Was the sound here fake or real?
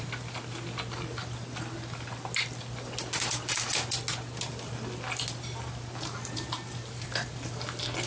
real